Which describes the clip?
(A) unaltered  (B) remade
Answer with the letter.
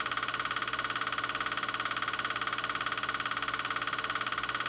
A